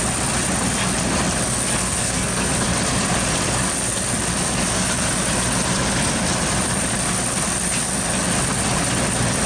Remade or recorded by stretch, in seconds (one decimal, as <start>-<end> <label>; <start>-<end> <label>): 0.0-1.8 recorded; 1.8-2.5 remade; 2.5-9.5 recorded